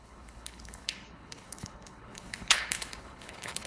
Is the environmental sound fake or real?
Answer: fake